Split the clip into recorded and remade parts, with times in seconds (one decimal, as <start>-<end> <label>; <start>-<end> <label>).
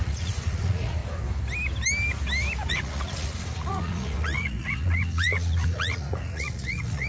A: 0.0-1.0 remade; 1.0-2.7 recorded; 2.7-7.1 remade